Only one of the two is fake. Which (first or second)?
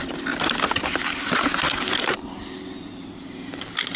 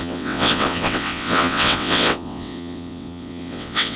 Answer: second